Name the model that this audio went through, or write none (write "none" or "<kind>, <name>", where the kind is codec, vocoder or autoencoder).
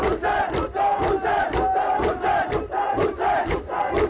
none